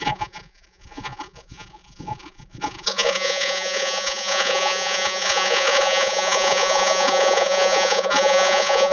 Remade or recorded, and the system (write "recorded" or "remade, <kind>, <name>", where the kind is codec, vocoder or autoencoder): remade, vocoder, Vocos